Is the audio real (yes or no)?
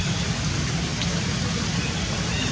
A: yes